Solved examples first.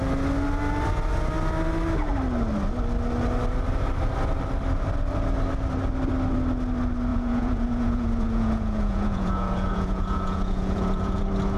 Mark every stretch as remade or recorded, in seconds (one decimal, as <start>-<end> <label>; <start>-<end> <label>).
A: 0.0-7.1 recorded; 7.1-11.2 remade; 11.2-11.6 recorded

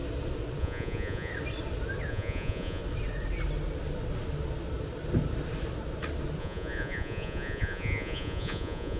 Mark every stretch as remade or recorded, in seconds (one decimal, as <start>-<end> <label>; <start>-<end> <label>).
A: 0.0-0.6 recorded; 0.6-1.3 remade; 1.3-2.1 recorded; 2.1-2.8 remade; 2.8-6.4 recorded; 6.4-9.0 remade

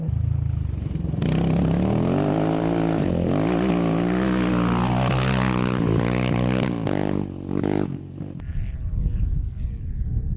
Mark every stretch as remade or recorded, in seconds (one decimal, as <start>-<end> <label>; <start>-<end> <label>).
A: 0.0-10.4 recorded

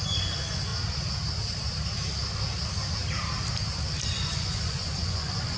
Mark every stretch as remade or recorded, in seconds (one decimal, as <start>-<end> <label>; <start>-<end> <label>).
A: 0.0-0.7 remade; 0.7-4.1 recorded; 4.1-5.6 remade

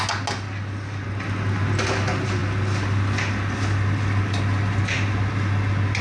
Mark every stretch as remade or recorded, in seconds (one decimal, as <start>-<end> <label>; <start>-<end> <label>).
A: 0.0-6.0 recorded

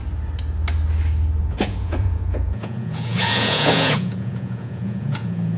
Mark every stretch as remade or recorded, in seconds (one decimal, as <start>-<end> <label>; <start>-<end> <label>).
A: 0.0-1.4 recorded; 1.4-5.6 remade